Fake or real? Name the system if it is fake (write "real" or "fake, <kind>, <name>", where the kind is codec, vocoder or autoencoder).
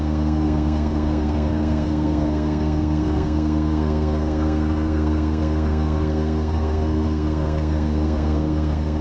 fake, codec, SNAC